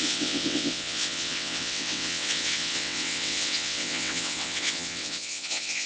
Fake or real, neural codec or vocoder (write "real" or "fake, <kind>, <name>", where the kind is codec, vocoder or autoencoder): fake, vocoder, WaveNeXt